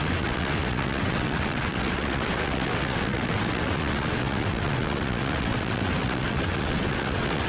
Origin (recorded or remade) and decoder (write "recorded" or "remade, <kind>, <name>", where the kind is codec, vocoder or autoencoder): remade, vocoder, WaveNeXt